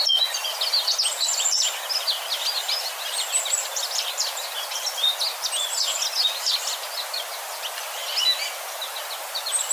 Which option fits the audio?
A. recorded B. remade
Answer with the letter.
A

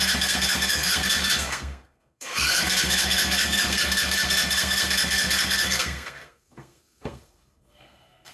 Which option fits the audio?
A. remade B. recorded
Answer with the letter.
A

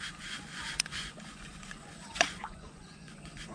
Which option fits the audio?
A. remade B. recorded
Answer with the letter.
A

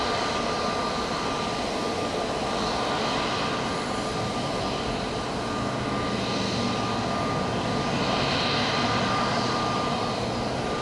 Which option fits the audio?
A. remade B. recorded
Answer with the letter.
B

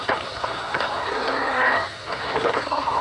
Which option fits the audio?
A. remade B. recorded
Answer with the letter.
A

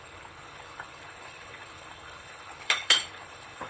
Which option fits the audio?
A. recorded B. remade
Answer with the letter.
B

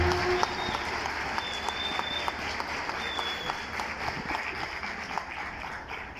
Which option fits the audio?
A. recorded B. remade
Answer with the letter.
A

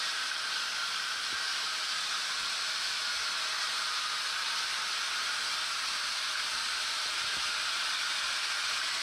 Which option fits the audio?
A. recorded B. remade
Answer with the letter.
A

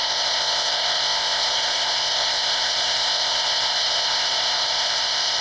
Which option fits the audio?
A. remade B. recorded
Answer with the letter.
A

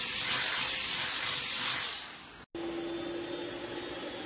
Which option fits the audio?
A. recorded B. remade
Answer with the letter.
A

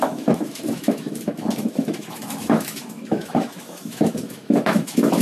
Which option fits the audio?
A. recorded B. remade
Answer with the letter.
B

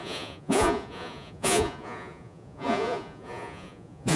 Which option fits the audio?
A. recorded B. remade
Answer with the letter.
B